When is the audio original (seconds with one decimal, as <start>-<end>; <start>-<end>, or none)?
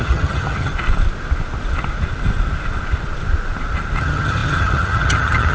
0.7-4.0